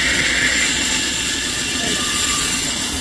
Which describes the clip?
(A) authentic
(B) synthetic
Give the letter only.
B